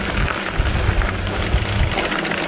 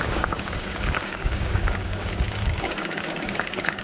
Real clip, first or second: first